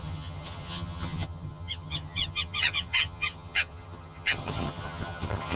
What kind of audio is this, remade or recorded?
remade